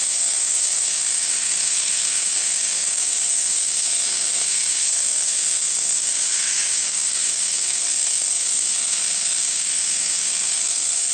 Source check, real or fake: fake